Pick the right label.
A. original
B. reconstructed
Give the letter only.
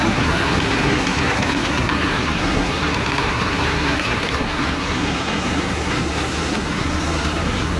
B